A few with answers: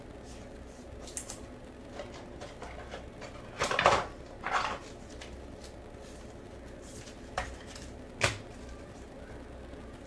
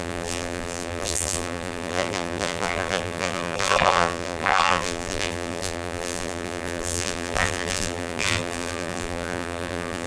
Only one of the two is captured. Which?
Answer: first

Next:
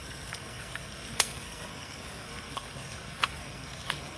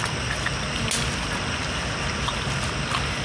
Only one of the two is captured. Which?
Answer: second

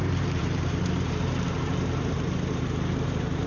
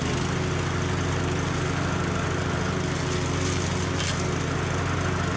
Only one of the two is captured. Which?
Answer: second